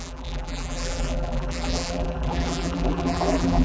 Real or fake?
fake